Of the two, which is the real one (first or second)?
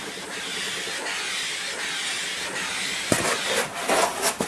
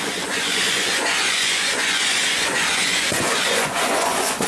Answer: first